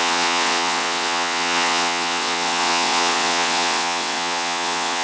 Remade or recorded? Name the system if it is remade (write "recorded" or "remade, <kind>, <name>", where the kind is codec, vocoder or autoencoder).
remade, vocoder, WaveNeXt